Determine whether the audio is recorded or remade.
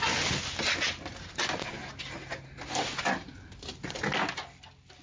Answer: recorded